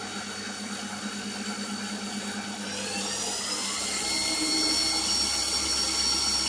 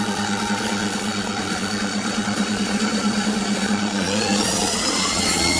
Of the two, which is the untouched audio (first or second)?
first